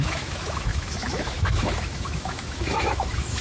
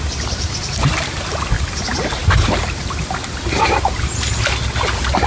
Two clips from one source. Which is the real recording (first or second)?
second